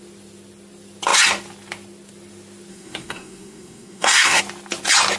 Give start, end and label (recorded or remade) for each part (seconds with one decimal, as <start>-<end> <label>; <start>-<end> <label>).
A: 0.0-2.7 recorded; 2.7-4.4 remade; 4.4-5.2 recorded